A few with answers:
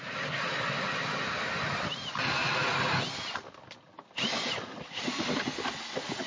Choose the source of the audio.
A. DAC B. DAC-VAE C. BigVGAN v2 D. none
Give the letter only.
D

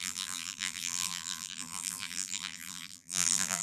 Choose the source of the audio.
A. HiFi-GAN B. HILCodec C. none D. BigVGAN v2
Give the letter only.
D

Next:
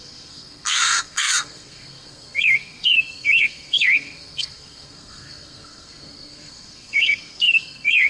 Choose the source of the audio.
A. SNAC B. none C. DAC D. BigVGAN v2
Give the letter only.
A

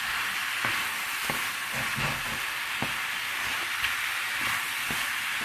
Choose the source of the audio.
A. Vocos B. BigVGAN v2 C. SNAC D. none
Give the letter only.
D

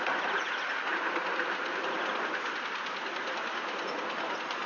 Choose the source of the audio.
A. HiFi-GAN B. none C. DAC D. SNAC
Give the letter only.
B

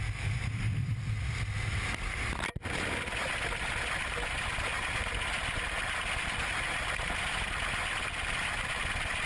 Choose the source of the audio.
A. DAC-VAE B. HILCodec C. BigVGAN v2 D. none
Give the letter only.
D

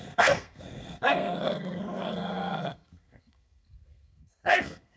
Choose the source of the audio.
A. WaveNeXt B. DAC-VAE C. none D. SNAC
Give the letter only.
D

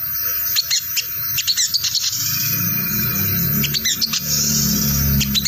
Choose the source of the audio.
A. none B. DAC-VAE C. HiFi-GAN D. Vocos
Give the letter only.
A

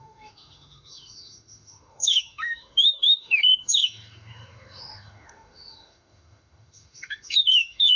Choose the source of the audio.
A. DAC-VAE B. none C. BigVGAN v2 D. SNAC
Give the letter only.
A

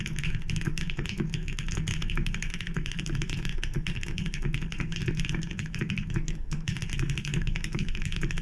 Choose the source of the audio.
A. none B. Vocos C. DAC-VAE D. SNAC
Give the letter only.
D